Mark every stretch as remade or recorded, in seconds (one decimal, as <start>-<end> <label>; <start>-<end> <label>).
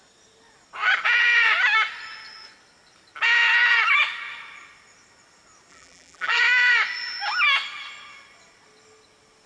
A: 0.0-5.7 recorded; 5.7-6.4 remade; 6.4-9.5 recorded